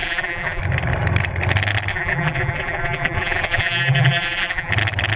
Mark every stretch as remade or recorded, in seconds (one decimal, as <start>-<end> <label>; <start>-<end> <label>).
0.0-0.6 remade; 0.6-1.9 recorded; 1.9-4.7 remade; 4.7-5.2 recorded